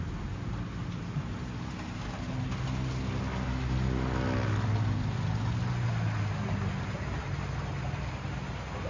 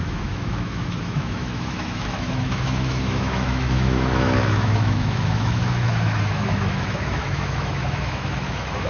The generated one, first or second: second